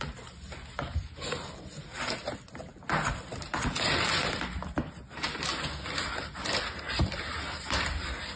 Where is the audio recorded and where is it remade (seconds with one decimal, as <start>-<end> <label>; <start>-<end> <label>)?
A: 0.0-8.4 recorded